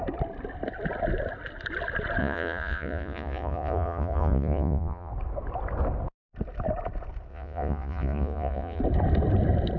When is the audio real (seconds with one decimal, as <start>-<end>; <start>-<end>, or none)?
0.0-2.2; 5.1-7.3; 8.8-9.8